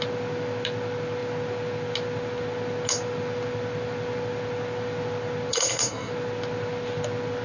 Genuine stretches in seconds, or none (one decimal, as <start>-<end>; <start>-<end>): 0.0-5.5; 6.1-7.4